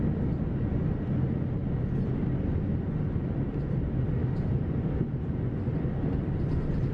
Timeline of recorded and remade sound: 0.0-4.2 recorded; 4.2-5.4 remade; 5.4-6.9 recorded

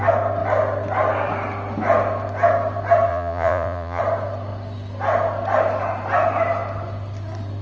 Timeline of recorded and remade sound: 0.0-3.1 recorded; 3.1-4.0 remade; 4.0-7.6 recorded

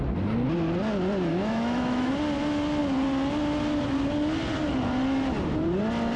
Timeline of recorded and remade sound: 0.0-1.3 recorded; 1.3-2.1 remade; 2.1-6.2 recorded

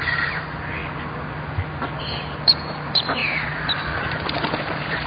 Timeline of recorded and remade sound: 0.0-0.8 remade; 0.8-2.0 recorded; 2.0-5.1 remade

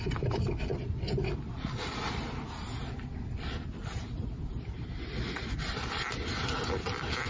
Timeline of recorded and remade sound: 0.0-7.3 recorded

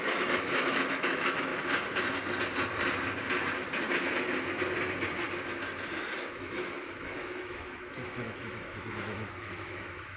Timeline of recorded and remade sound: 0.0-1.5 remade; 1.5-6.3 recorded; 6.3-10.2 remade

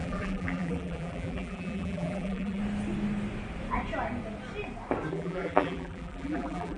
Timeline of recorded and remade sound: 0.0-2.6 remade; 2.6-5.1 recorded; 5.1-6.8 remade

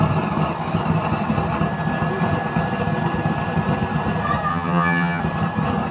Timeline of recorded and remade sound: 0.0-4.5 recorded; 4.5-5.2 remade; 5.2-5.9 recorded